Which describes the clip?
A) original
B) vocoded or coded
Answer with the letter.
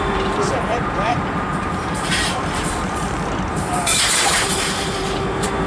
B